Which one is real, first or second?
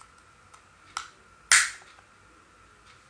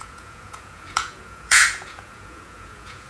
first